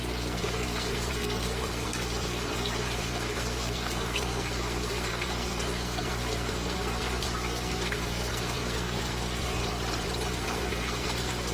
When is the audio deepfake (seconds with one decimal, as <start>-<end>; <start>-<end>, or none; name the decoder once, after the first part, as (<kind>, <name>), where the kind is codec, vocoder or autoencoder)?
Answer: 0.0-9.6 (codec, SNAC); 10.3-11.5